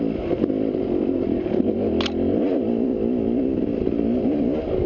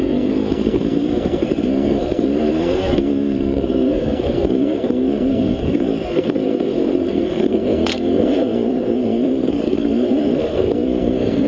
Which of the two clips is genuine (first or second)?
first